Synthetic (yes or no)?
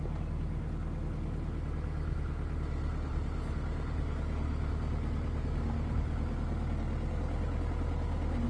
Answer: no